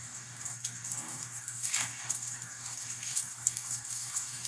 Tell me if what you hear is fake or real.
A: fake